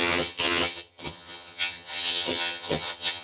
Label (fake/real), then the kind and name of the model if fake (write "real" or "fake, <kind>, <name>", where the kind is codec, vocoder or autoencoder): fake, vocoder, HiFi-GAN